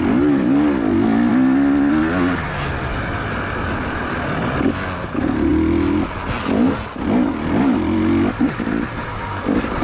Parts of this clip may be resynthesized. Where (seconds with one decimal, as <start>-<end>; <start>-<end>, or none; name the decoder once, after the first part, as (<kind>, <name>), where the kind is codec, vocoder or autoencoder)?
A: none